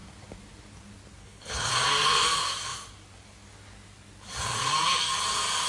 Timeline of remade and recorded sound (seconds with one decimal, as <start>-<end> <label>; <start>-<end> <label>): 0.0-1.2 recorded; 1.2-1.7 remade; 1.7-5.7 recorded